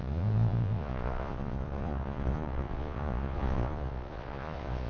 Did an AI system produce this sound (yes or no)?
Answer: yes